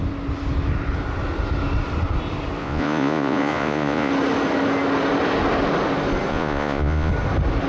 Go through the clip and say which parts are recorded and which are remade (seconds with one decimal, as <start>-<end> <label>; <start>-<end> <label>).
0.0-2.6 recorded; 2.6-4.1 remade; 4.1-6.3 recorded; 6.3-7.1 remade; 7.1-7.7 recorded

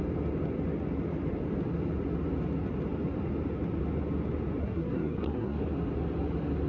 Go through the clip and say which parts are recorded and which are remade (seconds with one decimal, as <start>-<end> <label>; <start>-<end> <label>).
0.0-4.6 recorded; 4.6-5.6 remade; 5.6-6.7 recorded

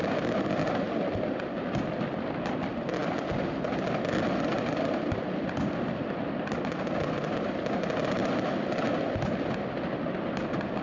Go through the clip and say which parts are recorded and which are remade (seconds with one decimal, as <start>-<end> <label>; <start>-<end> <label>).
0.0-10.8 recorded

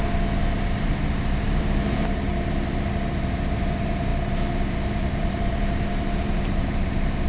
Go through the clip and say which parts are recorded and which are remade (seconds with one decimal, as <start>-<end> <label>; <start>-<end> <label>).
0.0-2.3 remade; 2.3-3.1 recorded; 3.1-4.1 remade; 4.1-4.7 recorded; 4.7-7.3 remade